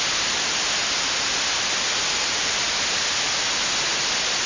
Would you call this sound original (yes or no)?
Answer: yes